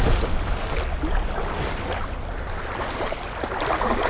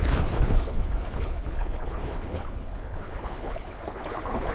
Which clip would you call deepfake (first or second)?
second